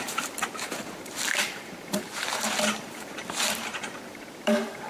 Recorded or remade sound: remade